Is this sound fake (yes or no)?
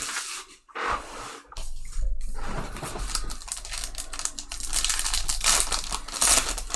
no